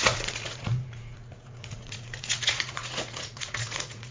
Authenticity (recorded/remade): remade